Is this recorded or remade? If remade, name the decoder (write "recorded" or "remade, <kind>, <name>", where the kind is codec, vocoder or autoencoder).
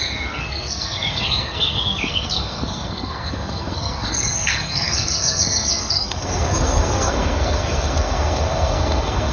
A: remade, codec, SNAC